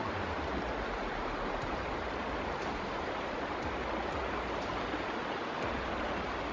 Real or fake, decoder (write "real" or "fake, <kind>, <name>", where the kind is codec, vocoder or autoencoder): real